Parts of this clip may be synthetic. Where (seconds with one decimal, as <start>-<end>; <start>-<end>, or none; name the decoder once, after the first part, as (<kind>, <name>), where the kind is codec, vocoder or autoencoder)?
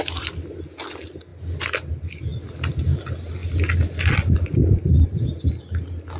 none